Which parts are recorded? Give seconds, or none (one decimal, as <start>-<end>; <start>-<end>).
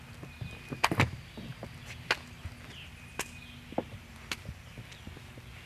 0.0-5.7